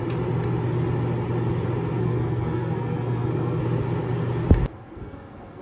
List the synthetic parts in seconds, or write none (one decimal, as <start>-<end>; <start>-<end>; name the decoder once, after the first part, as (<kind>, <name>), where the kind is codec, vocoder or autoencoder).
2.0-3.6 (codec, SNAC); 4.7-5.6